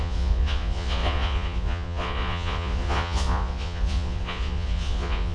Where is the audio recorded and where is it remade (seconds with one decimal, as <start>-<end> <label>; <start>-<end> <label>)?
0.0-5.3 remade